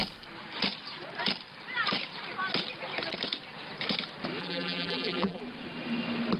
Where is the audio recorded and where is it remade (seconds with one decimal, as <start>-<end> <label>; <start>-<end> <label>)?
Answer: 0.0-4.4 recorded; 4.4-5.4 remade; 5.4-6.4 recorded